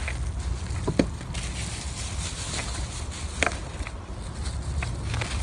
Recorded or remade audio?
recorded